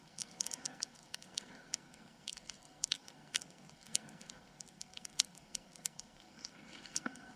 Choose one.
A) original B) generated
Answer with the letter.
B